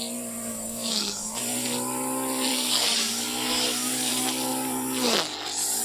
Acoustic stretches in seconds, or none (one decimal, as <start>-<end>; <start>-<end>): 0.0-0.5; 1.4-2.5; 4.1-5.8